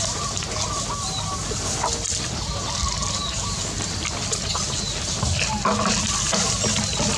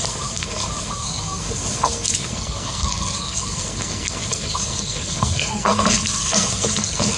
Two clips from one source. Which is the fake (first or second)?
second